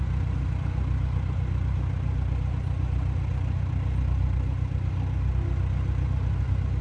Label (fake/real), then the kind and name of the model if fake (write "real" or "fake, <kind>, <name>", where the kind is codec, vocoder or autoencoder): real